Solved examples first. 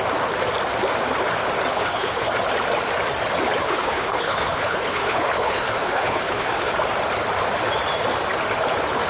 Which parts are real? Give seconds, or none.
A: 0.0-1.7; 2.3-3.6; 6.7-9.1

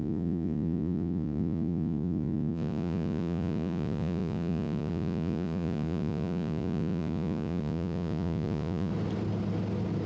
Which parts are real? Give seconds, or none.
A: 8.9-10.1

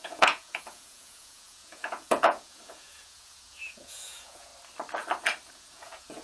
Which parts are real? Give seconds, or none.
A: 4.5-5.5

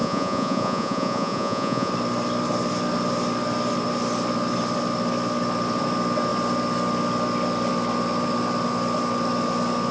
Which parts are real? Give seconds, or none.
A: 1.9-9.9

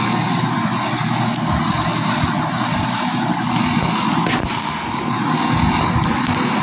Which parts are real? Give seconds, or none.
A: 0.0-4.4; 5.1-6.6

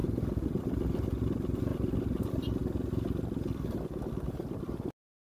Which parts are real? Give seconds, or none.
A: 0.0-5.2

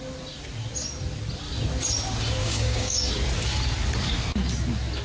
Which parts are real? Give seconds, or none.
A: 0.0-2.4; 3.1-5.0

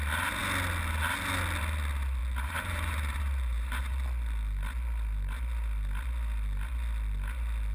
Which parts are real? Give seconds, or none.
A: 0.0-2.2; 3.9-7.7